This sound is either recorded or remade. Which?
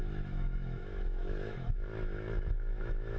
remade